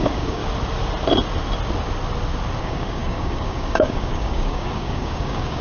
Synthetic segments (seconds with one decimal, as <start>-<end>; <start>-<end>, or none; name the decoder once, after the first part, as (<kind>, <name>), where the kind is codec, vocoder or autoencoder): 0.0-0.4 (codec, DAC); 2.6-5.6